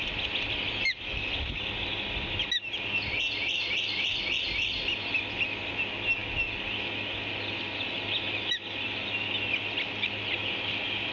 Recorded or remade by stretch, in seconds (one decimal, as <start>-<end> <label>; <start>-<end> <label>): 0.0-11.1 recorded